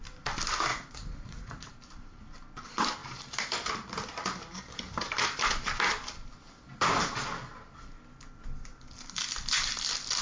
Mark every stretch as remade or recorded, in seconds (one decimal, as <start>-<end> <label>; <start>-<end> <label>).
0.0-0.7 recorded; 0.7-1.7 remade; 1.7-10.2 recorded